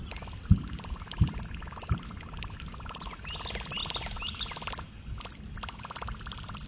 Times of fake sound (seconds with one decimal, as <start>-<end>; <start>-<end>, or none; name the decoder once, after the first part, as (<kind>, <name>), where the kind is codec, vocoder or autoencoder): none